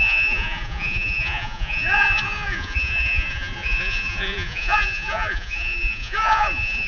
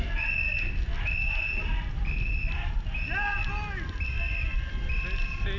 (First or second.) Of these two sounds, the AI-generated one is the first